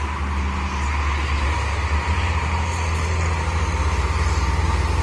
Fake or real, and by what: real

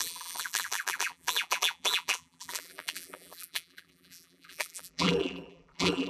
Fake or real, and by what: fake, vocoder, BigVGAN v2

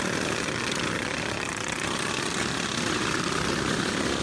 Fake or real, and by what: fake, vocoder, BigVGAN v2